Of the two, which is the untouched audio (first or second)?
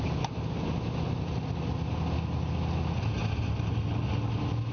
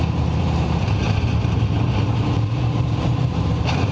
first